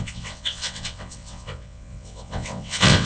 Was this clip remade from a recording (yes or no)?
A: yes